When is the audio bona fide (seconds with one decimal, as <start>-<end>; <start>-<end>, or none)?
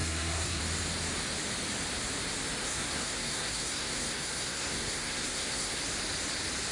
0.6-2.6; 5.8-6.7